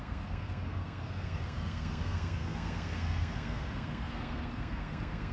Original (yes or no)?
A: no